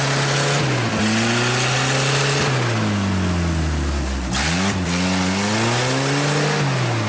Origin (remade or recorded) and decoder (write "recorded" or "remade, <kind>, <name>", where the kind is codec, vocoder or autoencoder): recorded